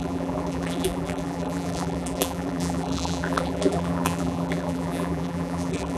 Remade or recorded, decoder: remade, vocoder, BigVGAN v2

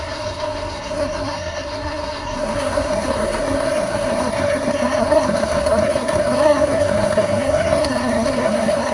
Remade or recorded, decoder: remade, codec, SNAC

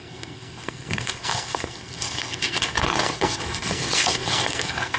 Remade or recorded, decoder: remade, codec, SNAC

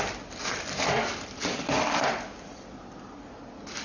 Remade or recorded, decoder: recorded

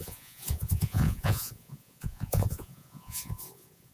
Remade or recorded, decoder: remade, vocoder, Vocos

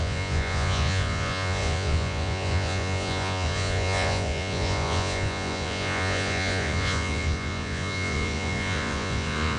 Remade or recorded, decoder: remade, vocoder, Vocos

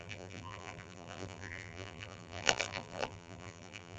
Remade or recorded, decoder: remade, vocoder, BigVGAN v2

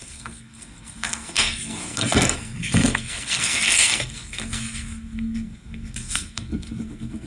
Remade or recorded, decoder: remade, codec, SNAC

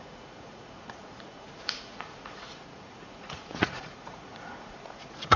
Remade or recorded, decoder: remade, vocoder, Vocos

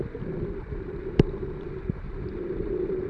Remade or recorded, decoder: recorded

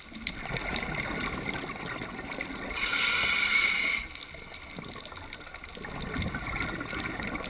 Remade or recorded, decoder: recorded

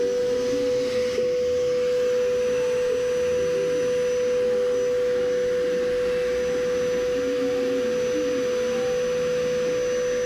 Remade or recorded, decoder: recorded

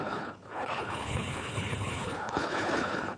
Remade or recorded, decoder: remade, codec, HILCodec